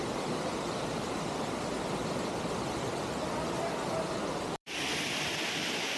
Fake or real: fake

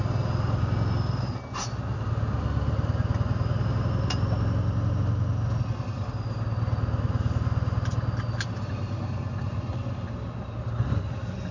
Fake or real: real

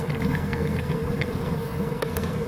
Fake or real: fake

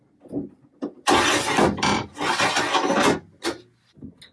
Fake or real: real